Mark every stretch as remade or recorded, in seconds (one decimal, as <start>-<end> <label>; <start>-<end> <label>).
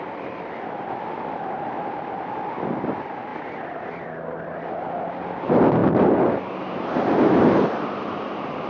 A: 0.0-8.7 recorded